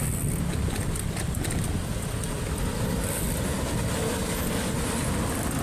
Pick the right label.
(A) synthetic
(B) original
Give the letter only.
A